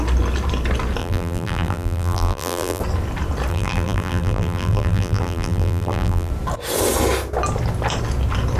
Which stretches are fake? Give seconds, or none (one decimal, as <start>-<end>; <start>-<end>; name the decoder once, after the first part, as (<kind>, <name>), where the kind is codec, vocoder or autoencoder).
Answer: 1.0-2.8 (vocoder, BigVGAN v2); 3.5-6.3